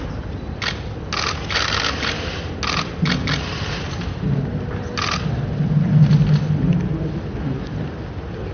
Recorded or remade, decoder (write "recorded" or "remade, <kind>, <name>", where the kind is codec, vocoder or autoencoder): recorded